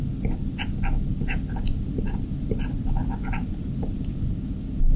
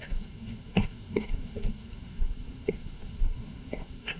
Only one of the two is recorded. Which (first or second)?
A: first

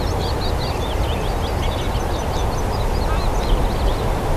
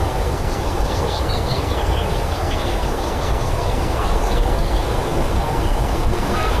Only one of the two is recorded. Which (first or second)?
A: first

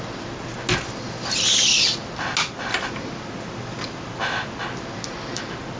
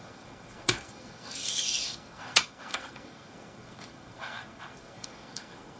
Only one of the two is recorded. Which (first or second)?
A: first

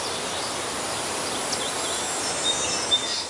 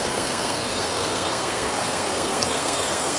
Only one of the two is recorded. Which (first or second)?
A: first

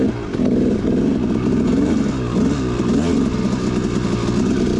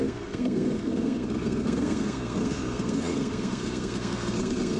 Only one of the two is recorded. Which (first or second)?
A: first